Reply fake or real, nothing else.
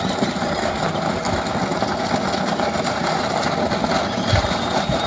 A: real